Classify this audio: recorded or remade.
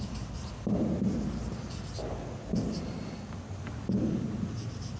recorded